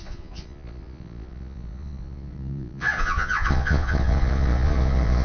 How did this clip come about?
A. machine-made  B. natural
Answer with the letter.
A